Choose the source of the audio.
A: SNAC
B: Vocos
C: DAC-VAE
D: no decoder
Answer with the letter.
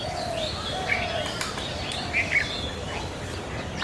D